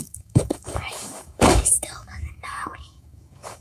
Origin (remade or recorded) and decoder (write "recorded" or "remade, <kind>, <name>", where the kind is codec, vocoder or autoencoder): remade, codec, DAC